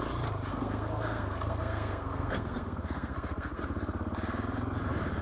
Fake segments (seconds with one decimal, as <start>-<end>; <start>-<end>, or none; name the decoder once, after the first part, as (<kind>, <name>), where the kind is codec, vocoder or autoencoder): 0.5-3.6 (codec, SNAC)